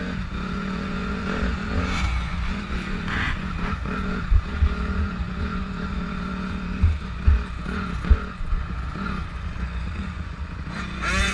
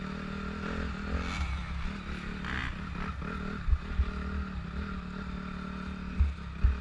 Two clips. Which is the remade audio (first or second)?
first